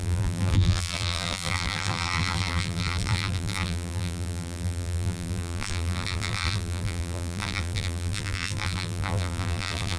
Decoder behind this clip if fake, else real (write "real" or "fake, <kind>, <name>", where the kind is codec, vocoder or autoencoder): fake, vocoder, BigVGAN v2